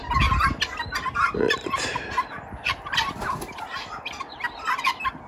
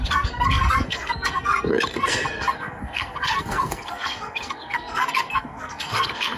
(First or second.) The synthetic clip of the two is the second